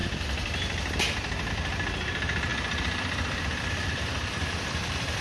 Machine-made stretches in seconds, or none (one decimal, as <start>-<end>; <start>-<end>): 2.5-5.2